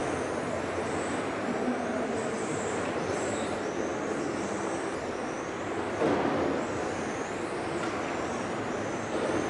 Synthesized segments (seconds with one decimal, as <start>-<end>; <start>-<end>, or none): 0.0-9.5